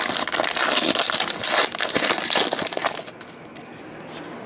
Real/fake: real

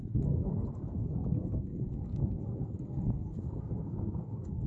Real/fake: fake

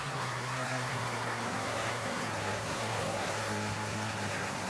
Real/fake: fake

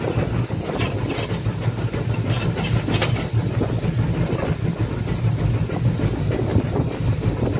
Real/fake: real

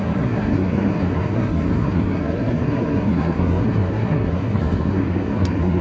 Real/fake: fake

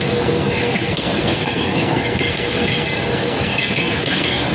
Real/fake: fake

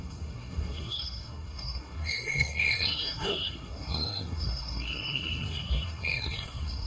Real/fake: fake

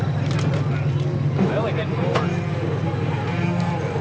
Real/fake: real